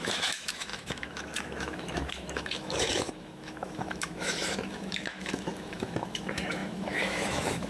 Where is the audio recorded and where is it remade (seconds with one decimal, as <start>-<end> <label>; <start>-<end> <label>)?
0.0-7.7 remade

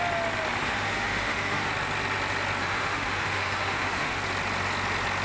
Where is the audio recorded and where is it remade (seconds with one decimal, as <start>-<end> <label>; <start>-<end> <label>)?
0.0-0.6 recorded; 0.6-1.7 remade; 1.7-2.6 recorded; 2.6-4.2 remade; 4.2-5.2 recorded

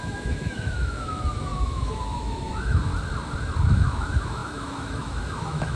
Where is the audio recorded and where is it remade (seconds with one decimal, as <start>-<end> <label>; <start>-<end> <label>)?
0.0-2.9 remade; 2.9-3.6 recorded; 3.6-5.8 remade

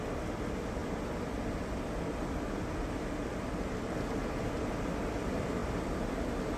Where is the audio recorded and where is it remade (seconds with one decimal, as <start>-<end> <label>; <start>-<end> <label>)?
0.0-6.6 recorded

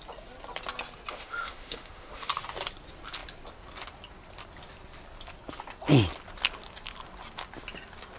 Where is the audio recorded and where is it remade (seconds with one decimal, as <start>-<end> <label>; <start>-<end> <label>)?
0.0-1.1 recorded; 1.1-2.3 remade; 2.3-8.2 recorded

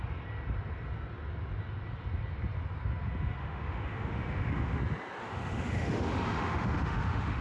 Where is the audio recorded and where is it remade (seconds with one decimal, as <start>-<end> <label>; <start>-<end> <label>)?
0.0-3.4 recorded; 3.4-4.8 remade; 4.8-5.2 recorded; 5.2-7.4 remade

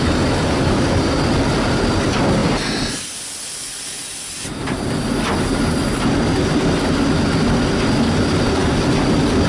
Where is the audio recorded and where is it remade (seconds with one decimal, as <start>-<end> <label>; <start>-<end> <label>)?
0.0-9.5 recorded

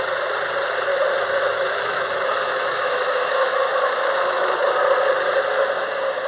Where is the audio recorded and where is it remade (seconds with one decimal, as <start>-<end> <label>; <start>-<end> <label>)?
0.0-0.9 recorded; 0.9-4.7 remade; 4.7-6.3 recorded